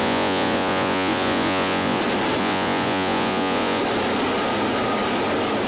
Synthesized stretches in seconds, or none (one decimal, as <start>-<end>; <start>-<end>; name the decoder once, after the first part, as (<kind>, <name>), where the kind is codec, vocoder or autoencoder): 0.0-2.0 (vocoder, Vocos); 2.4-3.8